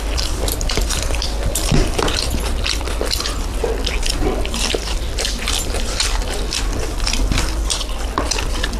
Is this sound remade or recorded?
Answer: remade